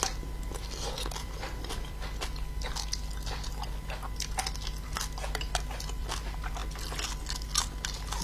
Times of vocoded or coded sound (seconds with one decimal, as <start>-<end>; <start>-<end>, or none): none